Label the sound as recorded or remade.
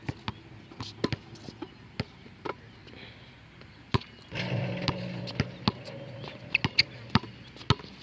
recorded